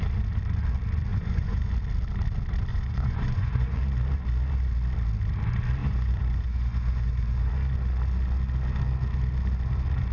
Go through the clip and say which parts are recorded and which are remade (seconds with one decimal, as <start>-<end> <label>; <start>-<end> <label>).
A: 0.0-1.1 recorded; 1.1-1.7 remade; 1.7-2.7 recorded; 2.7-3.8 remade; 3.8-5.8 recorded; 5.8-7.5 remade; 7.5-10.1 recorded